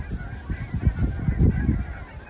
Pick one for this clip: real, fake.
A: real